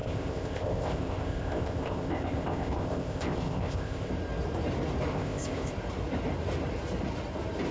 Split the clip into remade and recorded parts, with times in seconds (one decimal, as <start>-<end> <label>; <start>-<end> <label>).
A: 0.0-4.1 remade; 4.1-5.1 recorded; 5.1-5.7 remade; 5.7-7.7 recorded